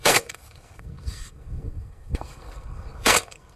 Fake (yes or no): yes